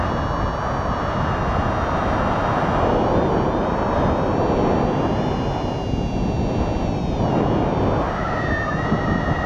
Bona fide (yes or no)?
yes